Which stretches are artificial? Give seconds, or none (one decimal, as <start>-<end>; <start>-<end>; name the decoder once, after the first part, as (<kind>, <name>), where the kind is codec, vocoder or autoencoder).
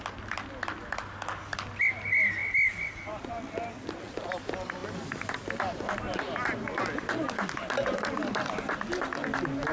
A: none